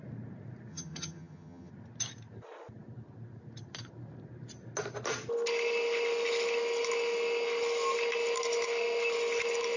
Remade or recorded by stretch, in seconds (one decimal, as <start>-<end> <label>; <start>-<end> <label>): 0.0-0.7 recorded; 0.7-1.7 remade; 1.7-9.8 recorded

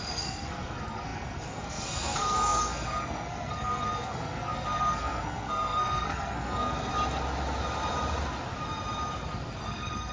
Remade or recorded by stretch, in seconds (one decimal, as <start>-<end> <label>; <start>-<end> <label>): 0.0-6.9 remade; 6.9-9.6 recorded; 9.6-10.1 remade